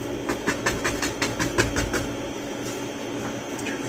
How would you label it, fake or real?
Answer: real